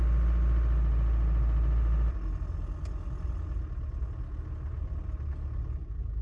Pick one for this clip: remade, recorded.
recorded